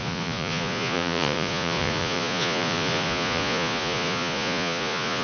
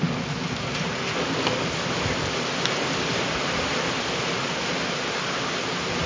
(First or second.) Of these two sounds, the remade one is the first